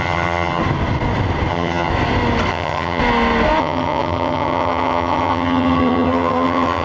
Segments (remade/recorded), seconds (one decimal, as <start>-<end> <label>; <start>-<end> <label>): 0.0-0.6 remade; 0.6-1.5 recorded; 1.5-1.9 remade; 1.9-2.5 recorded; 2.5-3.0 remade; 3.0-3.6 recorded; 3.6-6.8 remade